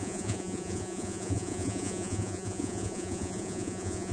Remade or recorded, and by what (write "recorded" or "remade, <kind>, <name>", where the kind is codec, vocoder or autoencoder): remade, vocoder, Vocos